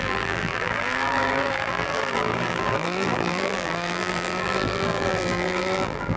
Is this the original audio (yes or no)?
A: no